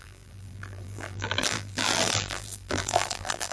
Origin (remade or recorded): remade